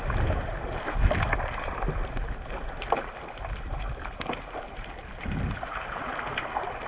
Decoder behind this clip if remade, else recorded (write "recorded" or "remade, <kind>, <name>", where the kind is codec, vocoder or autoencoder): recorded